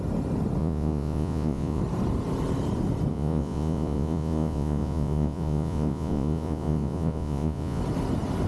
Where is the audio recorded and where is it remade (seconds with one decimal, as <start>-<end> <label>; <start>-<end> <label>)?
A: 0.0-0.6 recorded; 0.6-1.8 remade; 1.8-3.1 recorded; 3.1-7.8 remade; 7.8-8.5 recorded